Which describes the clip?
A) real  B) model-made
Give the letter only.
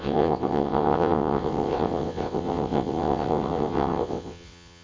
B